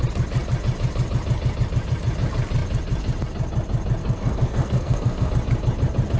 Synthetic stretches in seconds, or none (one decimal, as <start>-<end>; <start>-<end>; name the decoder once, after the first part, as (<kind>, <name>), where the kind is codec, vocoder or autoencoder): 4.0-5.3 (codec, SNAC)